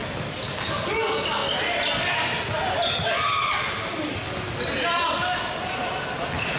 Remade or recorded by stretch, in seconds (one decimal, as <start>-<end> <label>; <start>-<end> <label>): 0.0-6.6 recorded